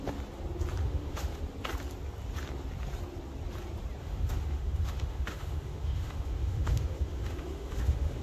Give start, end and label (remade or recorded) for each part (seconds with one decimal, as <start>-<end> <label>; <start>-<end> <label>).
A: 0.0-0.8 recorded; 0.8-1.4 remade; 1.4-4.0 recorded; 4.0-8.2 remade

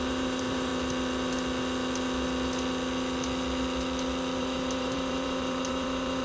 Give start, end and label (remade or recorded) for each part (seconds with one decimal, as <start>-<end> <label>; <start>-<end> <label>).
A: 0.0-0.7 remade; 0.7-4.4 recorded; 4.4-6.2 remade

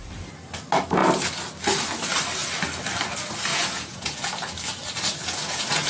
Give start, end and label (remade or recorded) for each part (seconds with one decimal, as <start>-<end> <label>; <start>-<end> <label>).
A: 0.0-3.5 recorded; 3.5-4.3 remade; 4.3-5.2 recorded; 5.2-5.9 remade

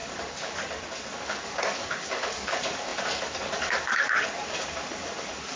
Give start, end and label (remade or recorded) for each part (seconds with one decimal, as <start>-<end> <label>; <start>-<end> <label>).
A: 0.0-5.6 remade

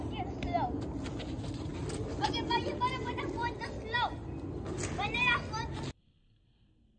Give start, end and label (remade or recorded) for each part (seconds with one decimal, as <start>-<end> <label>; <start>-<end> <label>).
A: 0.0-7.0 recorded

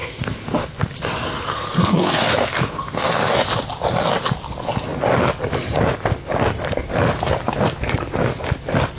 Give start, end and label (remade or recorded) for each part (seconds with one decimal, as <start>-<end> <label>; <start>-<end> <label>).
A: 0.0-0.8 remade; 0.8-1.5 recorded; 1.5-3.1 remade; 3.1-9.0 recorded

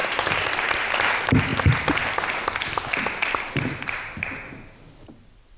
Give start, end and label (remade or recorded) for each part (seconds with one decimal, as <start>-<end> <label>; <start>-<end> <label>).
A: 0.0-0.5 remade; 0.5-5.6 recorded

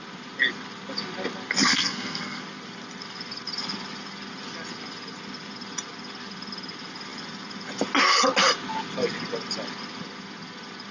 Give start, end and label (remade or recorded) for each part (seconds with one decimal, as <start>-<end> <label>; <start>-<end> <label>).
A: 0.0-1.7 recorded; 1.7-2.4 remade; 2.4-10.9 recorded